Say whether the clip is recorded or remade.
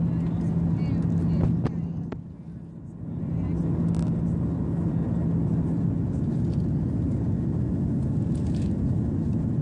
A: recorded